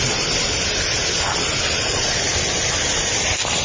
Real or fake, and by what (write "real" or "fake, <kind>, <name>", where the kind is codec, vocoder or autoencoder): real